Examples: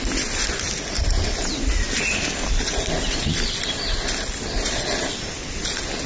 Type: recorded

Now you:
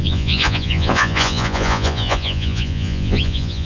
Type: remade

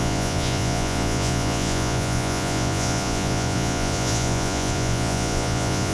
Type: remade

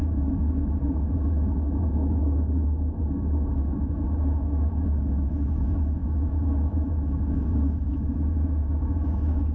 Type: remade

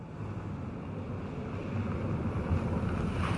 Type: recorded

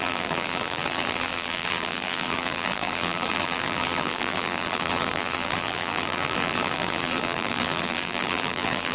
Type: remade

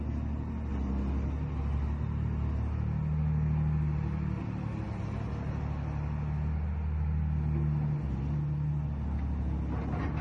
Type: recorded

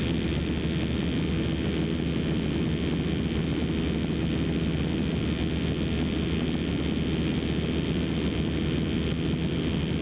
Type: recorded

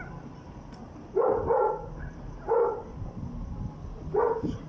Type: recorded